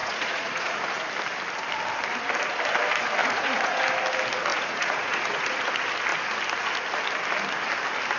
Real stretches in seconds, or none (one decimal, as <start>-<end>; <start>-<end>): 0.9-3.2; 3.8-4.5; 5.6-8.2